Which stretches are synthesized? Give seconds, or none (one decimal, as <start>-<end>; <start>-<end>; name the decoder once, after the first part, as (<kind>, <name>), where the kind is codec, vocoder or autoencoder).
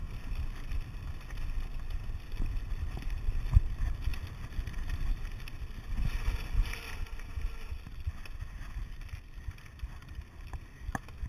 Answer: none